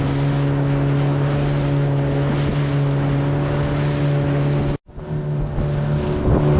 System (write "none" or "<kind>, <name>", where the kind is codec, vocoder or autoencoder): none